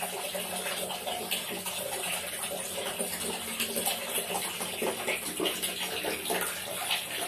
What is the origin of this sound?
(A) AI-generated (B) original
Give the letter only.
B